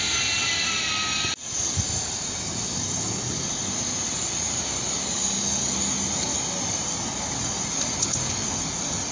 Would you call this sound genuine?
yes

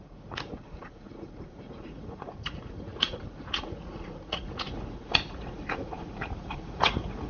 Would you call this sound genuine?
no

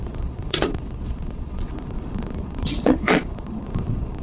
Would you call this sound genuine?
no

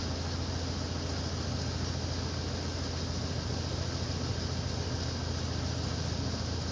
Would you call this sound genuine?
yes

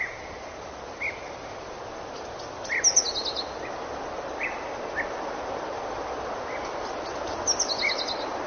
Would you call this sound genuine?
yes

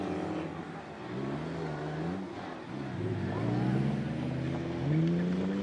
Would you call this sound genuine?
yes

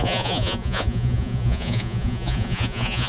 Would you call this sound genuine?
no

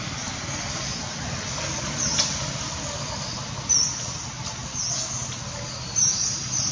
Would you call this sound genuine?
yes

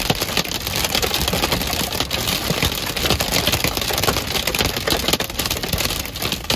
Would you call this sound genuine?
yes